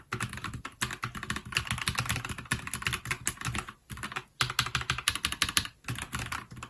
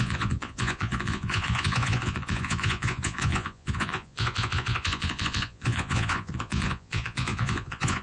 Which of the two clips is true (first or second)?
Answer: first